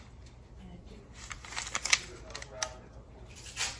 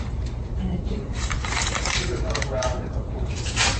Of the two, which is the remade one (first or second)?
second